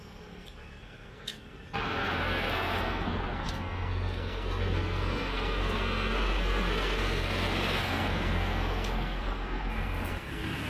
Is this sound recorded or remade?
remade